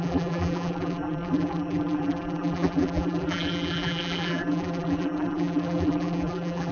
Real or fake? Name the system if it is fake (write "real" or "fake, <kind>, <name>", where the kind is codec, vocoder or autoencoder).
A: fake, vocoder, BigVGAN v2